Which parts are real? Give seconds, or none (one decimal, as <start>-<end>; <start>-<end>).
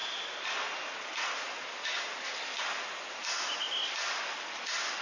0.0-5.0